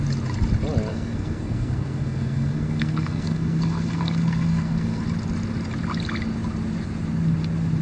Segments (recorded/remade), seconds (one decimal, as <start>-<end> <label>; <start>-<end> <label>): 0.0-0.9 recorded; 0.9-5.0 remade; 5.0-7.8 recorded